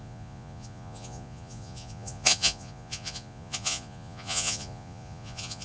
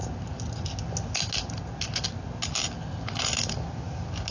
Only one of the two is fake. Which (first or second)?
first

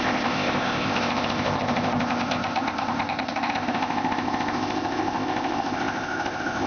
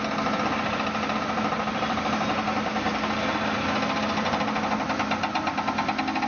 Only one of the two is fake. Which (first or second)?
first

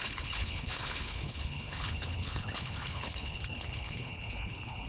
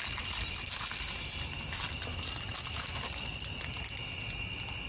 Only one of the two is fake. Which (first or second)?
first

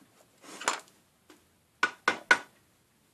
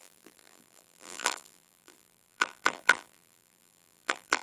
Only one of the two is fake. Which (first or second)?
second